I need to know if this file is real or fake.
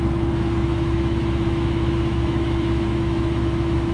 fake